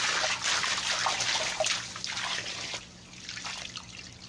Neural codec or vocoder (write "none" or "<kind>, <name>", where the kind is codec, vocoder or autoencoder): none